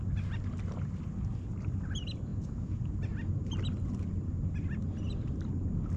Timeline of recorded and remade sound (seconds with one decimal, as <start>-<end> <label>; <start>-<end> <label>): 0.0-2.3 recorded; 2.3-2.9 remade; 2.9-6.0 recorded